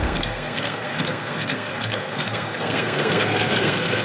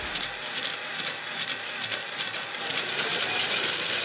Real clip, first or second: second